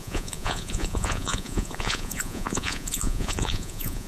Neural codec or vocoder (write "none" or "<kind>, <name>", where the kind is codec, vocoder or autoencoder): vocoder, Vocos